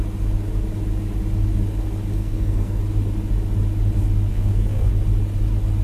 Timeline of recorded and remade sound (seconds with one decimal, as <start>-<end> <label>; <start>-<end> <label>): 0.0-2.1 recorded; 2.1-2.8 remade; 2.8-4.3 recorded; 4.3-4.9 remade; 4.9-5.8 recorded